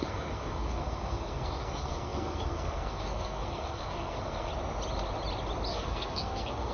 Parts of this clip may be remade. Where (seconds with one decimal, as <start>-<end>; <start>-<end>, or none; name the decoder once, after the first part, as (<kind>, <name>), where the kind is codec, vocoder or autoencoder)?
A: 0.0-4.5 (codec, SNAC); 5.7-6.7

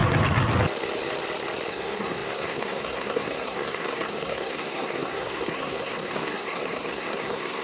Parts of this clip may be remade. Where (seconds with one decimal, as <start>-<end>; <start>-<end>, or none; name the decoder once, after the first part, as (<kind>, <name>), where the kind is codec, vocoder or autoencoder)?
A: 1.7-7.6 (codec, SNAC)

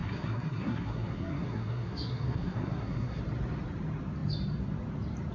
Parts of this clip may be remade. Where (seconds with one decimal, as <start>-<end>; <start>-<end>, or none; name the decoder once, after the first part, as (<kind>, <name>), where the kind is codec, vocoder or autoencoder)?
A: 0.0-3.2 (codec, SNAC)

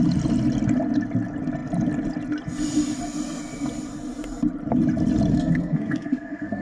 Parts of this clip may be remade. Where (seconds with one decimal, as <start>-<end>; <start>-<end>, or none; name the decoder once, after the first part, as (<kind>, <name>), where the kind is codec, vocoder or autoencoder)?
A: 5.3-6.6 (codec, SNAC)

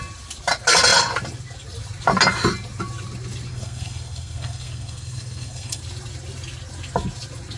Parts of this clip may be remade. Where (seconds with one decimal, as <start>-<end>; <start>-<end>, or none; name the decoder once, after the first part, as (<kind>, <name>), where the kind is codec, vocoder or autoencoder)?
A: 3.5-5.8 (codec, SNAC)

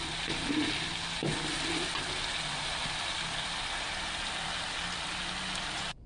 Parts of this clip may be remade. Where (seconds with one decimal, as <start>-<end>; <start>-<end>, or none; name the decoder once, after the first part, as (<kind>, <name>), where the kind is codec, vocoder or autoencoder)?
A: none

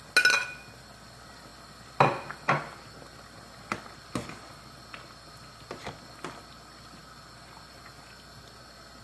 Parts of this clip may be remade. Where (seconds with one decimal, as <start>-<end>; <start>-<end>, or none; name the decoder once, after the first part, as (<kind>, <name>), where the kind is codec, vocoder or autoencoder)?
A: none